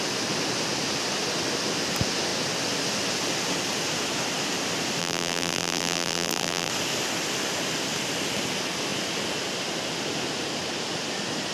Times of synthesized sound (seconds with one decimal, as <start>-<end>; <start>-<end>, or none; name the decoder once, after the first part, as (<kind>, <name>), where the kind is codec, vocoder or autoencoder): 5.0-6.7 (vocoder, BigVGAN v2)